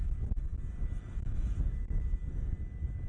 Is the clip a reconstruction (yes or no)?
no